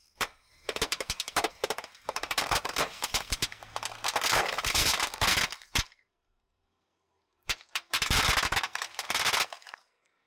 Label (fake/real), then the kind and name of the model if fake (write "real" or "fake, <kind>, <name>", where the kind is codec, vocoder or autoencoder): fake, codec, SNAC